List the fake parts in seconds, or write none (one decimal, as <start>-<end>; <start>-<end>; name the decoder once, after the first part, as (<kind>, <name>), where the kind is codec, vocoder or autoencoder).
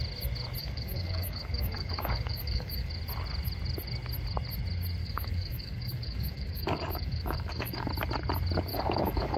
0.6-2.9 (codec, DAC); 5.0-7.9; 8.7-9.4